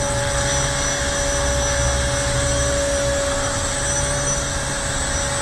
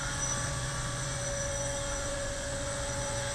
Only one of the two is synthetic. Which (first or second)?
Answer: second